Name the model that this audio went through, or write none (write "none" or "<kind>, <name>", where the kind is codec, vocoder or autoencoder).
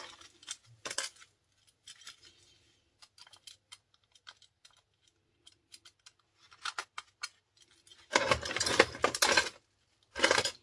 none